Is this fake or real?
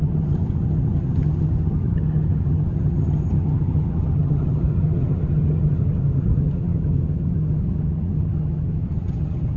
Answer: fake